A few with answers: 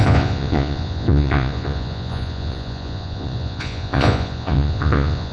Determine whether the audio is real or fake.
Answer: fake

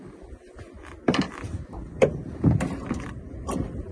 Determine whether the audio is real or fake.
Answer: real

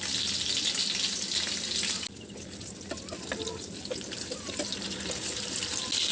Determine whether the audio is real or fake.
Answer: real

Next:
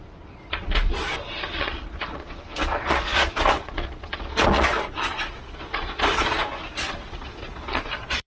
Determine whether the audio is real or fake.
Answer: fake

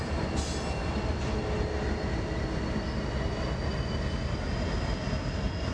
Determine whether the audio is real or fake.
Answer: real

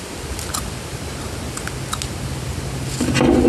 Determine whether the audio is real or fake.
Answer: real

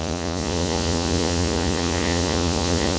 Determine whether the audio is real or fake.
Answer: fake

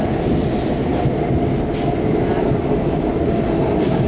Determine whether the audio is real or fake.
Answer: real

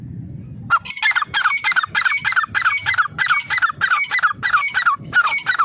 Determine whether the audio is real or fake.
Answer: real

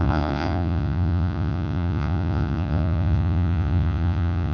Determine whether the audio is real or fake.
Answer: fake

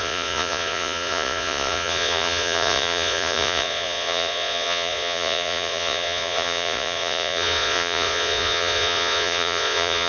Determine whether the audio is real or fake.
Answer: fake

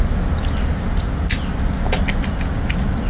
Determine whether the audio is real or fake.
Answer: real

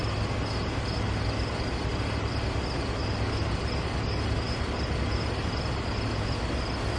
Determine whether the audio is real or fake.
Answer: real